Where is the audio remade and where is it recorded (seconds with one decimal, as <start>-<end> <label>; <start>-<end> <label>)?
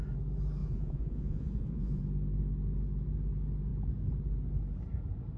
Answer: 0.0-0.6 recorded; 0.6-2.0 remade; 2.0-5.4 recorded